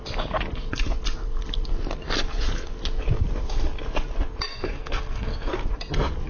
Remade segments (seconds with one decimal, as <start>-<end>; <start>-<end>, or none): 4.5-5.5